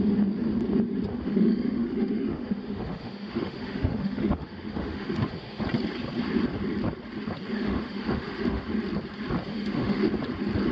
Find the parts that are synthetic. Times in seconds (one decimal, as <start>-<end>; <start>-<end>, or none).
1.1-5.6; 7.5-8.6; 9.5-10.1